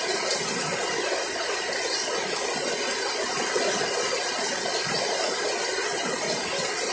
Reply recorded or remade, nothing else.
recorded